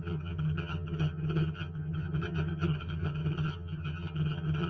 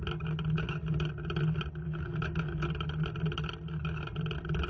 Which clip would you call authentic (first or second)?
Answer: second